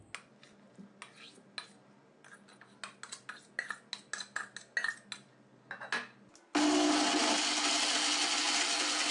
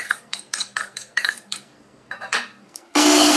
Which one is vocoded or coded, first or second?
second